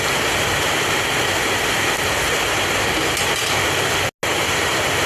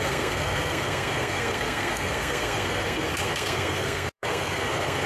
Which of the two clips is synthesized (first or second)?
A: second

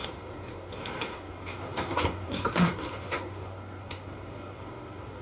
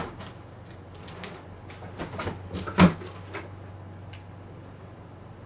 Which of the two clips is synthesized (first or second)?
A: first